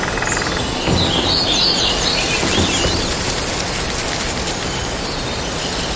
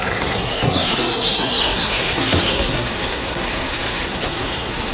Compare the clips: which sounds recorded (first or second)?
first